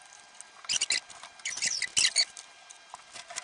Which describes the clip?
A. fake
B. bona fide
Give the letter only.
B